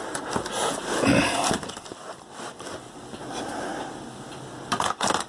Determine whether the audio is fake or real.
real